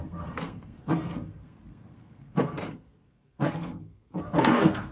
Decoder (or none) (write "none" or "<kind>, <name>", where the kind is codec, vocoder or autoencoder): codec, SNAC